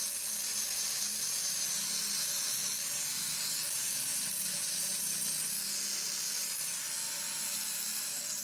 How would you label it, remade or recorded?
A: recorded